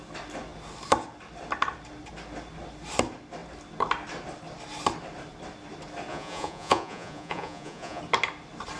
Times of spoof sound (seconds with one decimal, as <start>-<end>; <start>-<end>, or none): 6.1-8.0